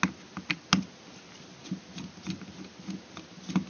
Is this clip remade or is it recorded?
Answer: recorded